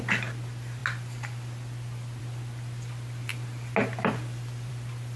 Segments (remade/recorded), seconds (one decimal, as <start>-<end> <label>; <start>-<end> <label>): 0.0-5.2 recorded

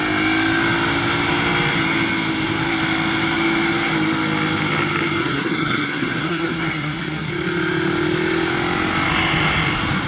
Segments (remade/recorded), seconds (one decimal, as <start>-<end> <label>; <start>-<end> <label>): 0.0-5.2 recorded; 5.2-7.3 remade; 7.3-10.1 recorded